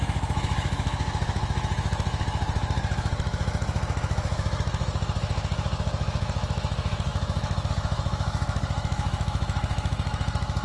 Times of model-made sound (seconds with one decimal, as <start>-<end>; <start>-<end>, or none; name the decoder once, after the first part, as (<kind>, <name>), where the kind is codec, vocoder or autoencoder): 0.0-10.6 (autoencoder, DAC-VAE)